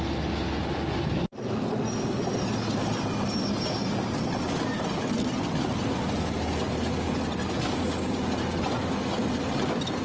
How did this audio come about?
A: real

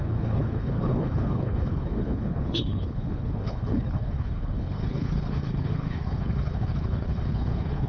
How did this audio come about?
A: fake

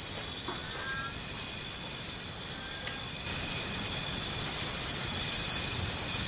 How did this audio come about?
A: real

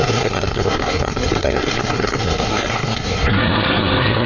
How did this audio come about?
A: fake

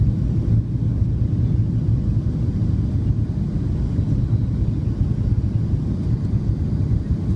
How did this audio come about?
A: real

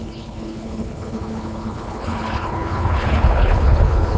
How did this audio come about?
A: fake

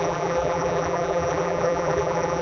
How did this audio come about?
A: fake